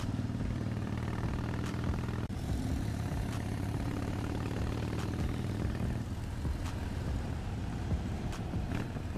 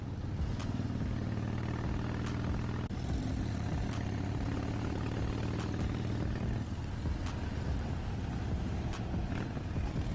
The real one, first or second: second